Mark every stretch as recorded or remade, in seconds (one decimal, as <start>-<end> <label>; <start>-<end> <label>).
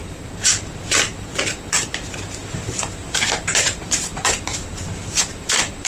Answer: 0.0-1.4 remade; 1.4-2.4 recorded; 2.4-5.9 remade